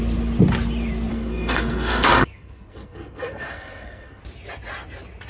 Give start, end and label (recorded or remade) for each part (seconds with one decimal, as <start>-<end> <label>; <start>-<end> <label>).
0.0-1.1 recorded; 1.1-4.2 remade; 4.2-5.3 recorded